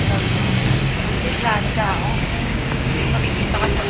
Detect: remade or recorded remade